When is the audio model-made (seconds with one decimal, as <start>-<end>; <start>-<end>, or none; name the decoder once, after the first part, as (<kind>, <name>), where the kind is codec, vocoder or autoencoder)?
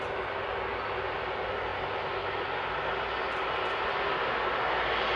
none